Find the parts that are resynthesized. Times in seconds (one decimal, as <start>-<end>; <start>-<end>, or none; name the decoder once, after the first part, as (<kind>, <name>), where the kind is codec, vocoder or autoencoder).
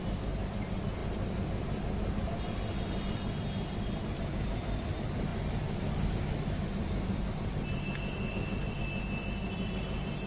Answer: none